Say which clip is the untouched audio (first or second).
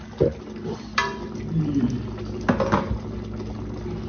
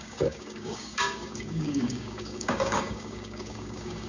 first